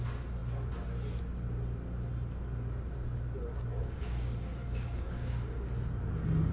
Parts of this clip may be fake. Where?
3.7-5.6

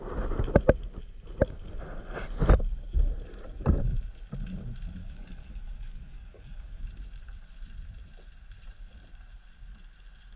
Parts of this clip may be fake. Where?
5.0-6.8

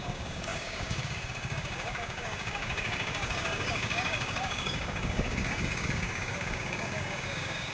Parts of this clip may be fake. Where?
0.0-7.7

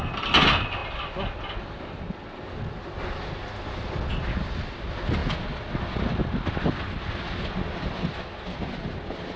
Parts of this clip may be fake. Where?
none

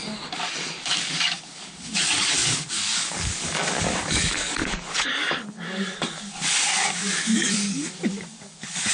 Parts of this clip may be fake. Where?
0.0-8.9